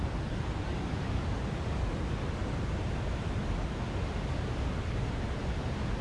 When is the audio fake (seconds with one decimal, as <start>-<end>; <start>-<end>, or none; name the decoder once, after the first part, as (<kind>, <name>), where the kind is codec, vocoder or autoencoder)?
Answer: 1.0-1.7 (vocoder, BigVGAN v2)